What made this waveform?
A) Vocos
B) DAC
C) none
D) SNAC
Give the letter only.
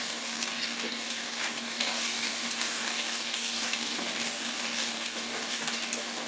B